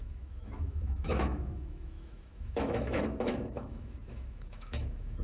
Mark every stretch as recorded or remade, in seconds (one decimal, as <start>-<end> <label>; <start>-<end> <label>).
0.0-5.2 remade